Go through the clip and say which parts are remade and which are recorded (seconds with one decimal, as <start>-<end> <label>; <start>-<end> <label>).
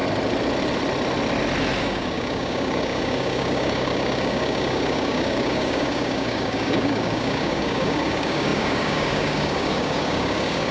0.0-1.8 recorded; 1.8-10.7 remade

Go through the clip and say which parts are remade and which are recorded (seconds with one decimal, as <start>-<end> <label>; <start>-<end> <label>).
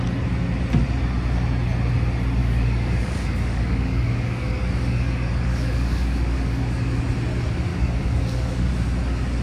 0.0-2.4 recorded; 2.4-7.0 remade; 7.0-7.7 recorded; 7.7-8.7 remade; 8.7-9.4 recorded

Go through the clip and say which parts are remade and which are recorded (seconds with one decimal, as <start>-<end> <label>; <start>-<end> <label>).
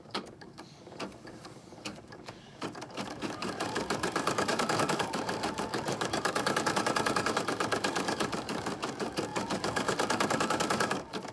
0.0-11.3 remade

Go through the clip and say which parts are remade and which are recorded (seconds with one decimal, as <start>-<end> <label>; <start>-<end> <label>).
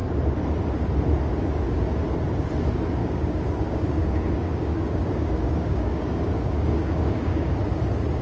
0.0-3.0 recorded; 3.0-7.5 remade; 7.5-8.2 recorded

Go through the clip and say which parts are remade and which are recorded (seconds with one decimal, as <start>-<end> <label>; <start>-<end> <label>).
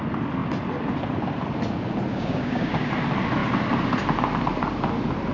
0.0-2.1 recorded; 2.1-2.9 remade; 2.9-5.3 recorded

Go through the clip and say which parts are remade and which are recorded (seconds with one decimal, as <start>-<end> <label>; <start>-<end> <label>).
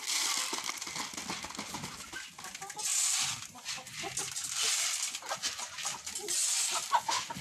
0.0-7.4 recorded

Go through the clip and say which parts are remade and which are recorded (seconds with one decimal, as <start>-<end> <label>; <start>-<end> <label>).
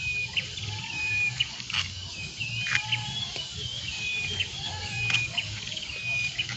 0.0-0.6 recorded; 0.6-2.3 remade; 2.3-3.2 recorded; 3.2-6.6 remade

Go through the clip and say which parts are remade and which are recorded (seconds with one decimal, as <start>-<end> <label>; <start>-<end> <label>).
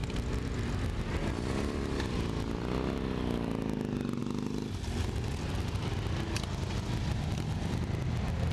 0.0-8.5 recorded